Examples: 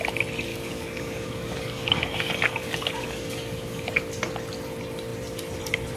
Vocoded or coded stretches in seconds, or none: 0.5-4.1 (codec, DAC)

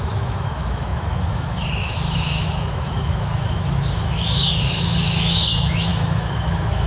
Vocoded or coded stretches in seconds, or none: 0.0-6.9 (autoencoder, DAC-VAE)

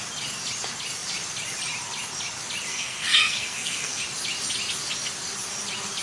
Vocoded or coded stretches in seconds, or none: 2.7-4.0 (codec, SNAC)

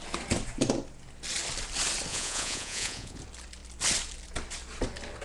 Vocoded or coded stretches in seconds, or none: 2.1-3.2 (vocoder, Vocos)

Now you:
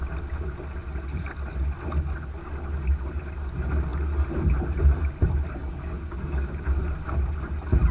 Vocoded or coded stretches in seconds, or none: 5.6-6.8 (codec, DAC)

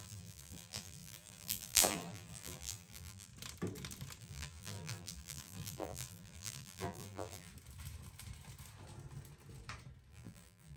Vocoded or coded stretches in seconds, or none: 0.0-3.3 (vocoder, BigVGAN v2); 4.2-7.5; 10.1-10.8

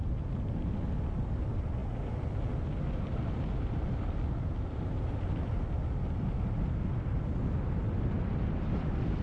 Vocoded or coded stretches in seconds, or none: none